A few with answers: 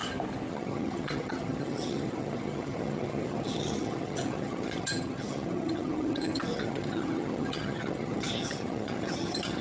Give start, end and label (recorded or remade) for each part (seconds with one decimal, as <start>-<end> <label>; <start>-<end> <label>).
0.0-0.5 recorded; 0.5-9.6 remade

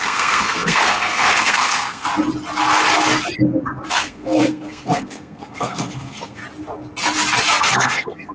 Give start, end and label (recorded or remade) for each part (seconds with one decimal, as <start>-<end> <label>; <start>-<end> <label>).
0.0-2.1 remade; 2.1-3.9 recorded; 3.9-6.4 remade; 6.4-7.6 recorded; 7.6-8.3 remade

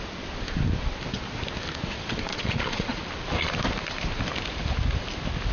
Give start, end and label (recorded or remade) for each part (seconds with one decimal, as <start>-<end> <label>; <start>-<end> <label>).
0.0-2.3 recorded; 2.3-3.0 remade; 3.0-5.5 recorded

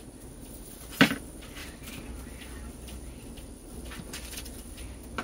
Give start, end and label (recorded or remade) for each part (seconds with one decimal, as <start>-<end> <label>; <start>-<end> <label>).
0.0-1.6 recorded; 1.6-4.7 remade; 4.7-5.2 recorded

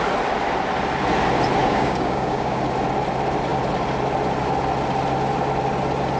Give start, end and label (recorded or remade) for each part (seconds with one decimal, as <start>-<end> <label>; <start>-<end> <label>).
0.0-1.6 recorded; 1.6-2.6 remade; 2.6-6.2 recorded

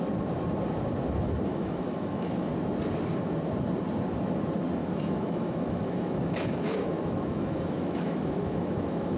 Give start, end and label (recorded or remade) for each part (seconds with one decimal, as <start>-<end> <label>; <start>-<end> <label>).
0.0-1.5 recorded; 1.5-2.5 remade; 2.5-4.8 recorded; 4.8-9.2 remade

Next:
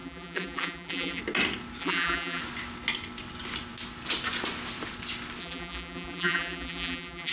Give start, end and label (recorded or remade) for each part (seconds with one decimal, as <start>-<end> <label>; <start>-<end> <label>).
0.0-1.2 remade; 1.2-1.8 recorded; 1.8-2.4 remade; 2.4-5.4 recorded; 5.4-7.3 remade